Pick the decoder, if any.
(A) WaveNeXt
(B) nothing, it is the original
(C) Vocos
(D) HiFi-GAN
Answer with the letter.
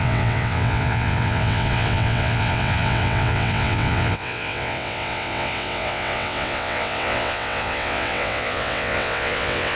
A